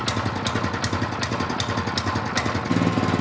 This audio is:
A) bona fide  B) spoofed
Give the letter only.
A